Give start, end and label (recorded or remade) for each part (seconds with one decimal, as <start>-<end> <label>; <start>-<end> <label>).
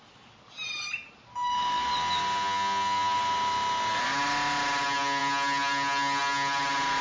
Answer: 0.0-7.0 recorded